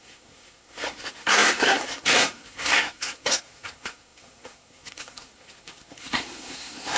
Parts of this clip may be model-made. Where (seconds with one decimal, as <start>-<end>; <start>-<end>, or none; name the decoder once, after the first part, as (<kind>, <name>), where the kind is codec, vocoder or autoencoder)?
0.0-7.0 (codec, SNAC)